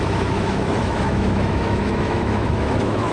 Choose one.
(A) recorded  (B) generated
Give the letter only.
B